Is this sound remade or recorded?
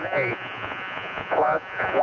remade